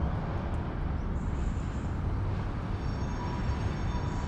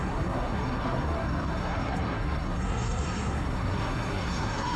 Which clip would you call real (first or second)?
first